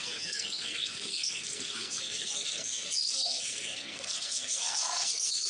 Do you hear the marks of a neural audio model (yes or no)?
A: yes